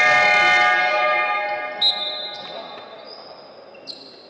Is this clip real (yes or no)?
yes